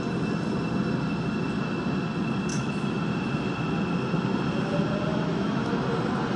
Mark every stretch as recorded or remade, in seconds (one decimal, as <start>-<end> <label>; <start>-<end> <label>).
0.0-2.5 recorded; 2.5-3.0 remade; 3.0-5.1 recorded; 5.1-5.7 remade; 5.7-6.4 recorded